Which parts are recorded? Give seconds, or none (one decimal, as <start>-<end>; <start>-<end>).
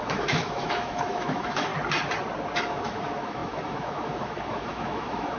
1.7-2.6